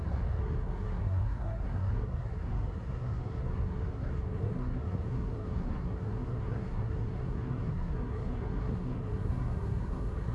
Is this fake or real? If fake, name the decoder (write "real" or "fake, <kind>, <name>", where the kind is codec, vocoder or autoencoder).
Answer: fake, codec, SNAC